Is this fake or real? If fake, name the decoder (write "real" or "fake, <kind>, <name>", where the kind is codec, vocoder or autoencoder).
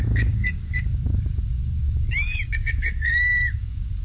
fake, codec, DAC